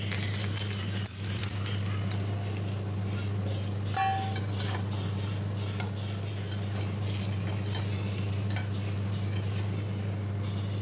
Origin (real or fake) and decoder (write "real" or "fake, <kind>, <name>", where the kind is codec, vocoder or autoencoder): real